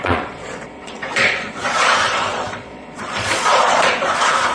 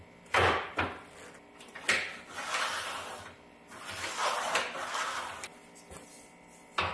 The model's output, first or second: first